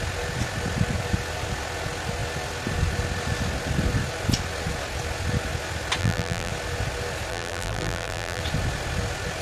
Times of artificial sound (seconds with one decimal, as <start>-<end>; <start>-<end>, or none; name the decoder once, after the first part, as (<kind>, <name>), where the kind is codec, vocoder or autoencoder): 6.0-6.5 (vocoder, BigVGAN v2); 7.3-8.4